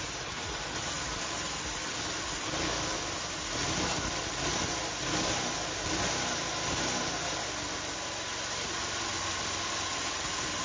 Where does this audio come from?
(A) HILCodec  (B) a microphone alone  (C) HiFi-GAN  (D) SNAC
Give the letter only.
B